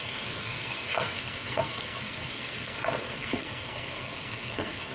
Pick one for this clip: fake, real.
fake